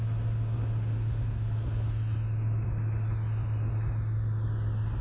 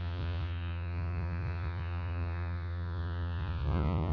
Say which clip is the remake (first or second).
second